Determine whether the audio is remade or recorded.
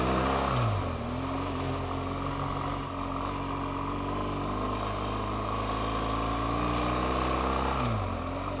recorded